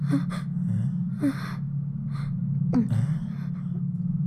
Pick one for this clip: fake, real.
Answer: real